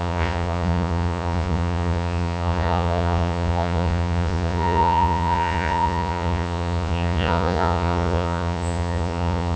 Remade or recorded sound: remade